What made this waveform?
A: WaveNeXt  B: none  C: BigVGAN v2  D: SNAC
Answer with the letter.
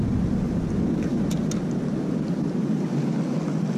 B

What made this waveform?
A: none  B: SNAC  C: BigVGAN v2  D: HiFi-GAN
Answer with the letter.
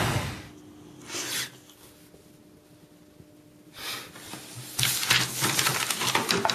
A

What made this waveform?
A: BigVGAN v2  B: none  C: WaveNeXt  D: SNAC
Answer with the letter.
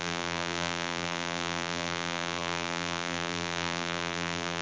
A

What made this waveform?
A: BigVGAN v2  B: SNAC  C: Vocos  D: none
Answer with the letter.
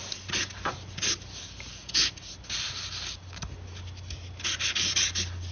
D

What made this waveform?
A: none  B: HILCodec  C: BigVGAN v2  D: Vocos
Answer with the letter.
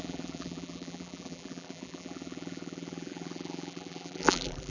C